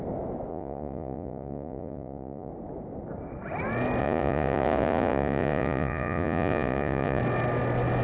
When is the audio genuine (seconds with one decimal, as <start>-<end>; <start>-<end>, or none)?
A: 0.0-0.5; 2.5-4.0; 7.2-8.0